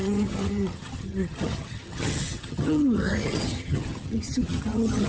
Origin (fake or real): fake